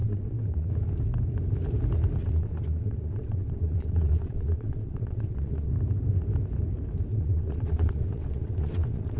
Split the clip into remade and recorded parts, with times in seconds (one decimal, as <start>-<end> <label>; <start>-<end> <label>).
0.0-0.7 remade; 0.7-2.2 recorded; 2.2-5.7 remade; 5.7-7.1 recorded; 7.1-9.2 remade

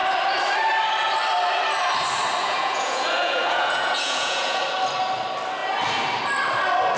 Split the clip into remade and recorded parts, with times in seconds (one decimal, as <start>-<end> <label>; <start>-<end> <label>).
0.0-2.4 recorded; 2.4-4.6 remade; 4.6-7.0 recorded

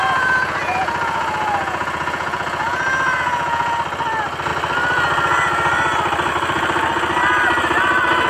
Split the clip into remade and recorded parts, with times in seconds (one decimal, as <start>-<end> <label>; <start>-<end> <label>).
0.0-3.8 remade; 3.8-8.3 recorded

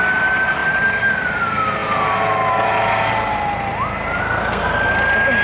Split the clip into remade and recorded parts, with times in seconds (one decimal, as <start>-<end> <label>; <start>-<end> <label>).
0.0-4.2 recorded; 4.2-4.9 remade; 4.9-5.4 recorded